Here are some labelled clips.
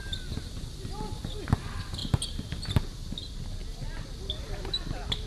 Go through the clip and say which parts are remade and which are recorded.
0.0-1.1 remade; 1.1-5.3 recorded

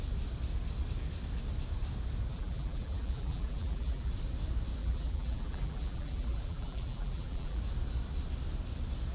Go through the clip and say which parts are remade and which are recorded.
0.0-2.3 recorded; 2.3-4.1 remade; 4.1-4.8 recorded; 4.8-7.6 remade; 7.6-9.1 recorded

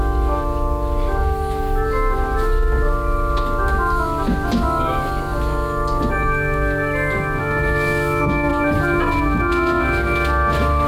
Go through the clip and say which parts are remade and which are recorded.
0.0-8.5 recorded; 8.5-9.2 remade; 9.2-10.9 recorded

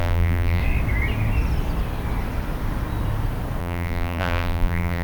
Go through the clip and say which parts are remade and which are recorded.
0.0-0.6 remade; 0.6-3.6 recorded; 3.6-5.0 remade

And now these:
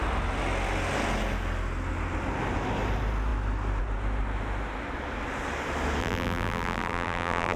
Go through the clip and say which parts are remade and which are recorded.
0.0-6.0 recorded; 6.0-7.6 remade

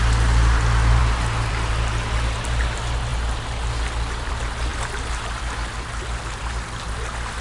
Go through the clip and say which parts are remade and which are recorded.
0.0-3.1 recorded; 3.1-4.3 remade; 4.3-7.4 recorded